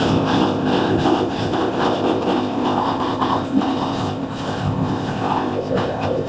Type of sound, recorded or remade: remade